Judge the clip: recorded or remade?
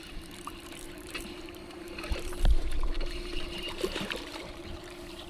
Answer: remade